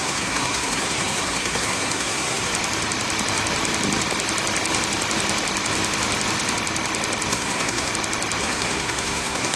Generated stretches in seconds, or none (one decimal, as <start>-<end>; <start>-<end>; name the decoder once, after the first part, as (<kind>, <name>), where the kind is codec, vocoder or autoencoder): 0.0-2.5 (codec, SNAC); 7.3-7.9; 8.4-9.6